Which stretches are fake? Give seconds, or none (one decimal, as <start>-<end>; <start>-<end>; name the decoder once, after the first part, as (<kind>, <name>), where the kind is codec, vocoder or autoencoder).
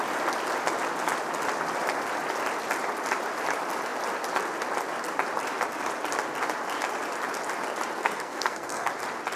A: 8.0-8.9 (codec, SNAC)